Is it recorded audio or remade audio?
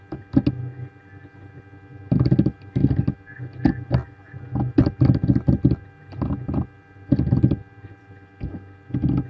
recorded